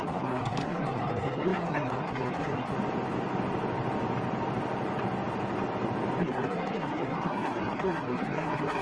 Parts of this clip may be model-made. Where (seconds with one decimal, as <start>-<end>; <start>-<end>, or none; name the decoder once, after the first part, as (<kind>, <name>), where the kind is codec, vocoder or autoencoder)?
0.0-2.7 (codec, SNAC); 6.2-8.8

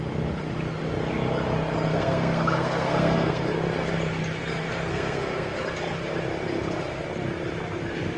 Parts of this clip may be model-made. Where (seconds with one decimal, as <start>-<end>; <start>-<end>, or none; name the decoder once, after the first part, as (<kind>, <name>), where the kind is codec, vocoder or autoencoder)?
1.9-3.5 (codec, SNAC); 4.9-5.6

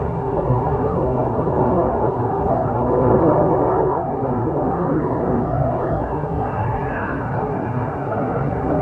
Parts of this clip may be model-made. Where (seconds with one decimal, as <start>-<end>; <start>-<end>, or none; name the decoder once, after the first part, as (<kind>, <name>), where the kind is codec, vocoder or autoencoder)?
0.0-8.8 (codec, SNAC)

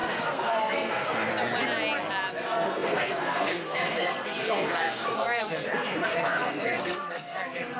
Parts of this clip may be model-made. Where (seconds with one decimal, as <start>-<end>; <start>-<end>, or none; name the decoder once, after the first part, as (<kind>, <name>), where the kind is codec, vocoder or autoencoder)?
0.0-1.3 (codec, SNAC); 2.3-7.8

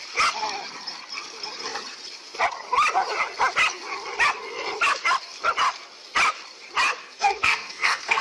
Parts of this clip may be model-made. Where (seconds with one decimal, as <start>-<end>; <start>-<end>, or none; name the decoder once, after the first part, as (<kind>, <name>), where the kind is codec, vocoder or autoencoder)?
7.0-8.2 (codec, SNAC)

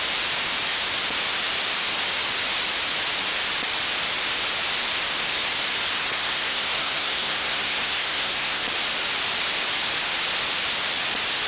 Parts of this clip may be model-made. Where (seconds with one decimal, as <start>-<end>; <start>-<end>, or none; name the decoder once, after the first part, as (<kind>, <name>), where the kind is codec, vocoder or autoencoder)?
6.0-8.6 (codec, SNAC)

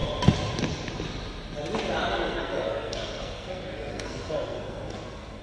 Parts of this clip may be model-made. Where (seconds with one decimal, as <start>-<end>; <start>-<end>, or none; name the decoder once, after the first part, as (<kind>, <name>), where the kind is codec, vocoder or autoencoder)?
2.0-5.4 (codec, SNAC)

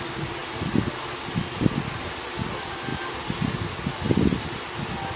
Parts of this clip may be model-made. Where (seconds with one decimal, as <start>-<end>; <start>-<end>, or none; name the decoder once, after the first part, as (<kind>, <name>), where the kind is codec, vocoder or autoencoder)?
none